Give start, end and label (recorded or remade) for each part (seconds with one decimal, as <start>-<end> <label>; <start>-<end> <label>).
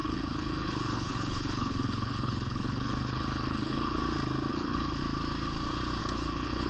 0.0-4.0 remade; 4.0-4.5 recorded; 4.5-5.0 remade; 5.0-6.0 recorded; 6.0-6.7 remade